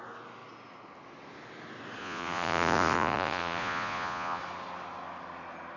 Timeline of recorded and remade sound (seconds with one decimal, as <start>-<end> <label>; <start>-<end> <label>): 0.0-2.0 recorded; 2.0-4.4 remade; 4.4-5.8 recorded